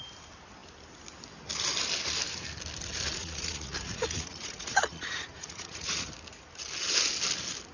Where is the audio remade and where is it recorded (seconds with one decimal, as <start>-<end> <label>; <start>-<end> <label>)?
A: 0.0-3.2 recorded; 3.2-6.1 remade; 6.1-7.7 recorded